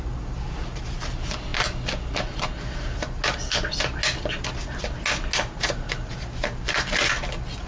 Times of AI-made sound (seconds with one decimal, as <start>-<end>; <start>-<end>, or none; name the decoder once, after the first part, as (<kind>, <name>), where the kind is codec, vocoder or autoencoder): none